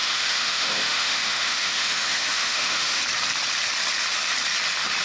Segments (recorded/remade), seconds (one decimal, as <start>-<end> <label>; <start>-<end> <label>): 0.0-3.0 remade; 3.0-5.0 recorded